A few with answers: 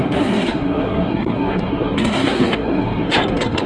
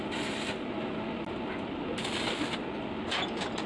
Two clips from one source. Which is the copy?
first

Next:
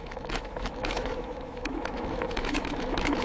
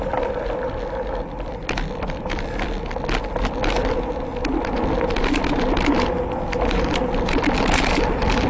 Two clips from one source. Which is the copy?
first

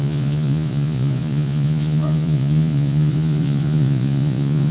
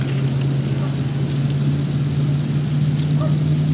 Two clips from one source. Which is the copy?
first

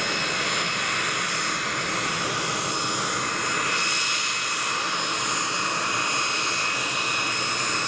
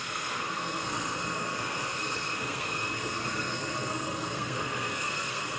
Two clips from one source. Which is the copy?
second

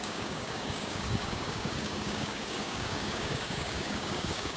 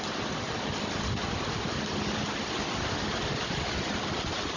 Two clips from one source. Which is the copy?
first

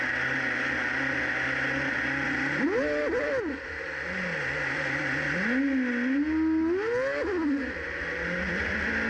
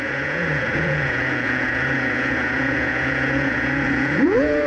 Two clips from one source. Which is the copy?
second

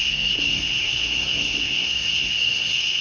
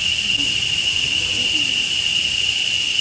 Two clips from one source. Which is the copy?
first